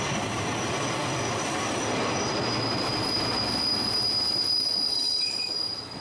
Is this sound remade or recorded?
recorded